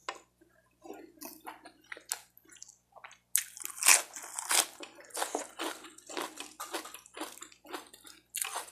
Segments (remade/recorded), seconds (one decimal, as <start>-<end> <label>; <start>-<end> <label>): 0.0-8.7 recorded